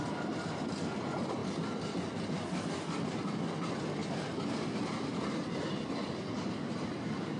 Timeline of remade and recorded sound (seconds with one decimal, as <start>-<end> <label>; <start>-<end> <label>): 0.0-7.4 recorded